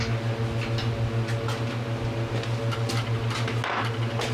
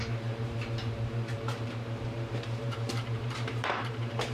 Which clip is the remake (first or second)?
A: second